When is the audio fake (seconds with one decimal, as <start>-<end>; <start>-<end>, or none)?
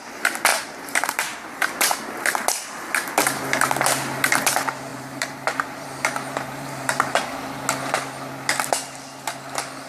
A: 0.5-1.7; 4.9-7.2